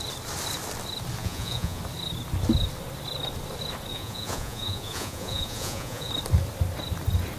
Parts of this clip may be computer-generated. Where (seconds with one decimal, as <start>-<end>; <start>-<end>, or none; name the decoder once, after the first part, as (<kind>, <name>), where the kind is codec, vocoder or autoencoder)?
1.2-1.8 (vocoder, Vocos); 3.9-6.1